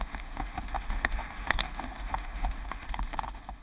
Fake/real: fake